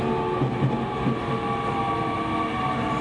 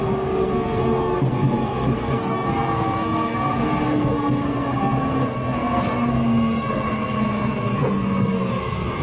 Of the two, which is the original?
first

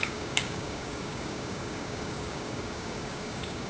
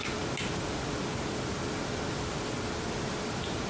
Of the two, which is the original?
second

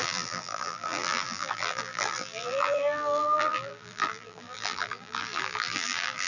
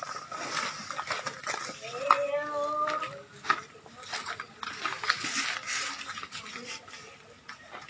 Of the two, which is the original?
second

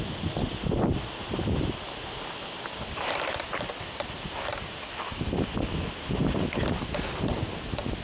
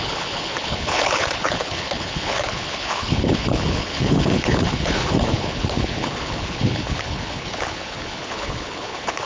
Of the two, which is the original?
first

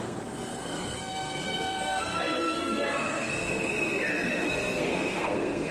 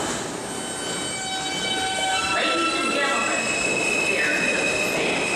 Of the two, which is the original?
second